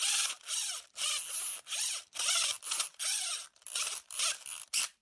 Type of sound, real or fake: real